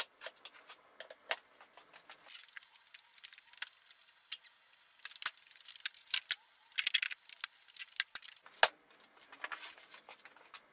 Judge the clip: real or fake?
real